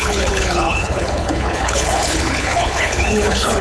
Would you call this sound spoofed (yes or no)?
yes